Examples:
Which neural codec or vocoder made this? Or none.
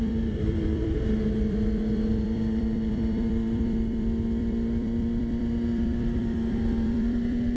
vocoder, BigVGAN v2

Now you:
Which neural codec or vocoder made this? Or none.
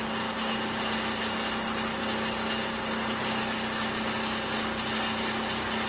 none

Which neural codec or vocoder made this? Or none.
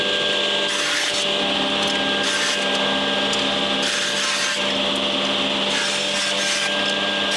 none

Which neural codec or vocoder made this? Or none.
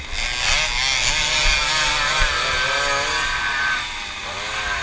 none